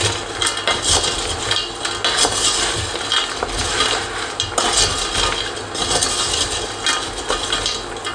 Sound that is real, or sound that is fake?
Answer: real